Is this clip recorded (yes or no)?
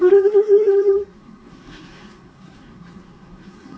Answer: no